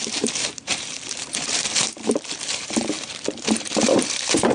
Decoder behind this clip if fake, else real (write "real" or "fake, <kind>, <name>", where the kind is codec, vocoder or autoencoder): fake, vocoder, BigVGAN v2